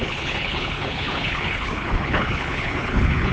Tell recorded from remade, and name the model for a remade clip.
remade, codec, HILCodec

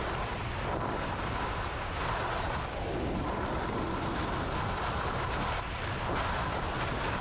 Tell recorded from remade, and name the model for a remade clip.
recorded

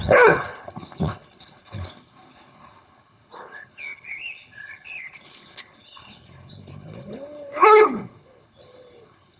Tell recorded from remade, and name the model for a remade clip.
remade, codec, HILCodec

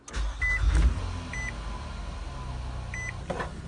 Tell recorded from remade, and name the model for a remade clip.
recorded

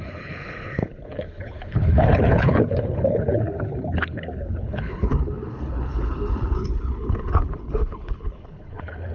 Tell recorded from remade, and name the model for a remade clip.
remade, codec, HILCodec